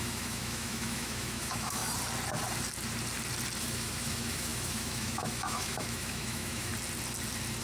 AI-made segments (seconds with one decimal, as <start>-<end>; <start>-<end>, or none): 0.0-1.8; 3.6-6.7